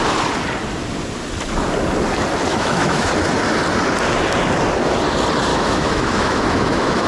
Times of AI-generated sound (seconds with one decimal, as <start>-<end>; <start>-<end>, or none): 2.5-3.1; 5.5-7.1